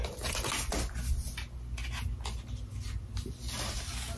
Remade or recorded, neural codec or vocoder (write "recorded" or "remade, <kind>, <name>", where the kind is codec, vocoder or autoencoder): recorded